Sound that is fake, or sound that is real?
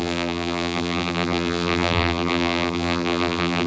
fake